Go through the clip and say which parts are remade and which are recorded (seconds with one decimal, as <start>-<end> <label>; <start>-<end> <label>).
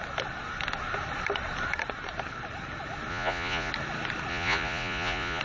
0.0-3.1 recorded; 3.1-3.7 remade; 3.7-4.3 recorded; 4.3-5.4 remade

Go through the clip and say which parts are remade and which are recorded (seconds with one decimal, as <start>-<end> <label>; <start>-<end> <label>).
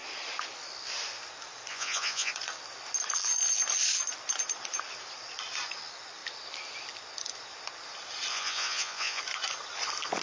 0.0-1.7 recorded; 1.7-2.3 remade; 2.3-8.3 recorded; 8.3-9.2 remade; 9.2-10.2 recorded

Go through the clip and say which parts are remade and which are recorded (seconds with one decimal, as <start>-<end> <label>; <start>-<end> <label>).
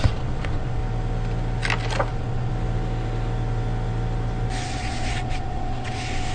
0.0-0.8 remade; 0.8-2.1 recorded; 2.1-2.5 remade; 2.5-4.6 recorded; 4.6-6.3 remade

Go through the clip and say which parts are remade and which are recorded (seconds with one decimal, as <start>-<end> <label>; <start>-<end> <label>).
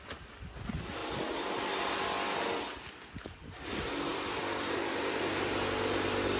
0.0-6.4 recorded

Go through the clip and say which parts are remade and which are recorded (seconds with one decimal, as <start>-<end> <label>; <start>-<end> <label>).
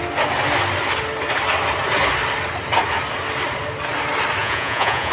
0.0-4.4 recorded; 4.4-5.1 remade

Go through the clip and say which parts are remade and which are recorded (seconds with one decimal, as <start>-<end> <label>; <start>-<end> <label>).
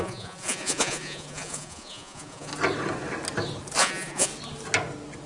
0.0-2.5 remade; 2.5-3.8 recorded; 3.8-4.3 remade; 4.3-5.3 recorded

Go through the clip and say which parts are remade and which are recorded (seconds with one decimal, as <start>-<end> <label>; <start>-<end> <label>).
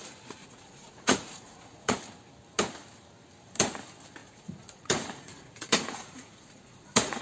0.0-0.4 recorded; 0.4-2.0 remade; 2.0-4.2 recorded; 4.2-7.2 remade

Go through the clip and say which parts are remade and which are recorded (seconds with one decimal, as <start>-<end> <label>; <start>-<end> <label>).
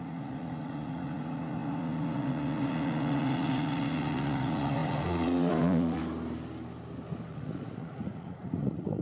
0.0-6.0 remade; 6.0-7.3 recorded; 7.3-9.0 remade